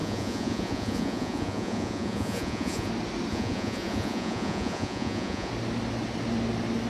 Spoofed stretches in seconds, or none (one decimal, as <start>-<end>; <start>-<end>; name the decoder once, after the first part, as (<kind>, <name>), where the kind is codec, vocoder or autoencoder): 0.0-2.9 (vocoder, Vocos); 3.3-5.5